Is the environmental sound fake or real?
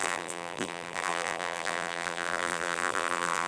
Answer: fake